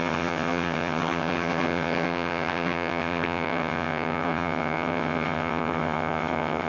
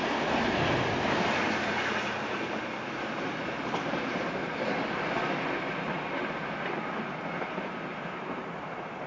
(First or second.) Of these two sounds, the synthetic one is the first